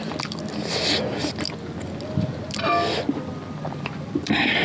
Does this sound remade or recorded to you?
recorded